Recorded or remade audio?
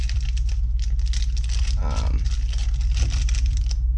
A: recorded